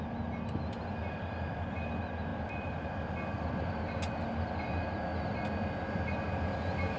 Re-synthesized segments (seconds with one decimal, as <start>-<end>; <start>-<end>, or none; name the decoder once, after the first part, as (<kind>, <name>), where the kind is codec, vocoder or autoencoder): 2.3-2.9 (vocoder, BigVGAN v2)